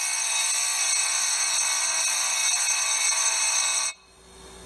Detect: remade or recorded recorded